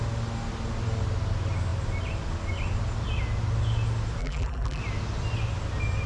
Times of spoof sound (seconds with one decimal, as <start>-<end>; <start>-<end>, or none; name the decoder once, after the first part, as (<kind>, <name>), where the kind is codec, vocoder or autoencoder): 4.2-4.8 (vocoder, BigVGAN v2)